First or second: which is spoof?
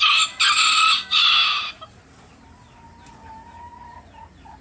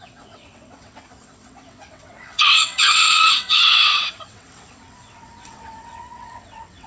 second